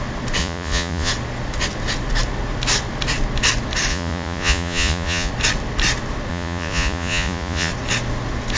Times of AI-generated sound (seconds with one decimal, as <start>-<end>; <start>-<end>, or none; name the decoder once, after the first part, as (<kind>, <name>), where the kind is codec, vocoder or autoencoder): 0.4-1.1 (vocoder, Vocos); 3.9-5.3; 6.3-7.7